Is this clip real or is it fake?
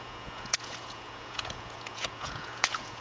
fake